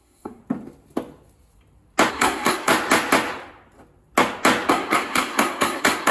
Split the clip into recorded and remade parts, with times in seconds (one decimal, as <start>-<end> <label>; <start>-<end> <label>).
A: 0.0-0.4 remade; 0.4-2.1 recorded; 2.1-2.7 remade; 2.7-4.7 recorded; 4.7-6.1 remade